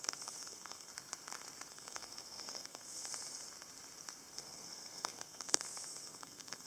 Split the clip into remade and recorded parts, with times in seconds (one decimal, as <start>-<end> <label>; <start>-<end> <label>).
0.0-0.9 remade; 0.9-1.7 recorded; 1.7-3.1 remade; 3.1-4.3 recorded; 4.3-6.7 remade